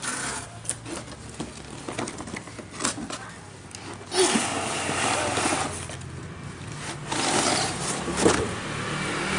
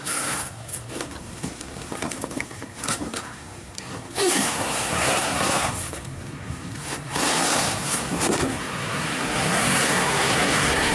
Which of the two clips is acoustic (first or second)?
first